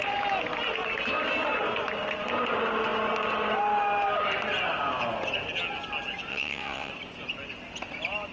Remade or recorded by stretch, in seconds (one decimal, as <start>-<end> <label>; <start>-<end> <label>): 0.0-6.3 recorded; 6.3-6.9 remade; 6.9-8.3 recorded

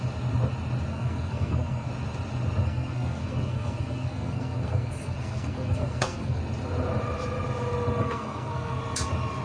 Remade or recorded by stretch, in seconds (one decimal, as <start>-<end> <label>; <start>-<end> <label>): 0.0-0.9 recorded; 0.9-1.9 remade; 1.9-2.6 recorded; 2.6-6.4 remade; 6.4-8.0 recorded; 8.0-8.8 remade; 8.8-9.4 recorded

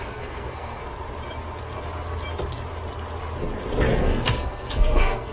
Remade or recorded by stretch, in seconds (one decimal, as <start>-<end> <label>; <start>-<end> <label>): 0.0-0.8 remade; 0.8-4.0 recorded; 4.0-5.3 remade

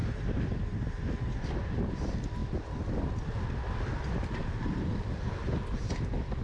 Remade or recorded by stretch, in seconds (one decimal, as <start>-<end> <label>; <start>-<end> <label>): 0.0-1.1 remade; 1.1-6.4 recorded

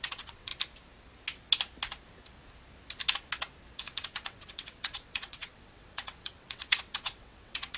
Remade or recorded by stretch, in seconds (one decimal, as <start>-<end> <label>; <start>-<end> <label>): 0.0-0.5 remade; 0.5-3.8 recorded; 3.8-7.8 remade